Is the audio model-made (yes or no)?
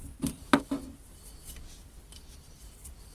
no